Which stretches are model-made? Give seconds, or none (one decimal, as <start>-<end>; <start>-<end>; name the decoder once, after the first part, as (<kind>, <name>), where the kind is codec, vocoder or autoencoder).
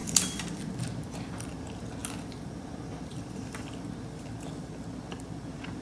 0.0-0.6 (vocoder, BigVGAN v2); 2.0-3.7